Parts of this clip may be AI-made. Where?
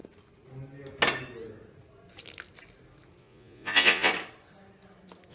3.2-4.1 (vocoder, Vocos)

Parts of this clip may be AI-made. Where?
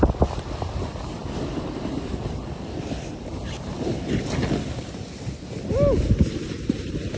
none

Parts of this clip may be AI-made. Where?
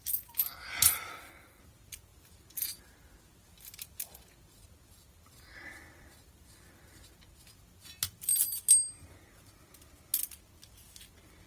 1.1-1.6 (codec, SNAC)